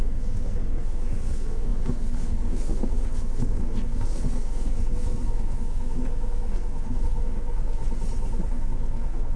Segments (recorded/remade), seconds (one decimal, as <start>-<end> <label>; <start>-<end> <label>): 0.0-7.8 remade; 7.8-8.5 recorded; 8.5-9.4 remade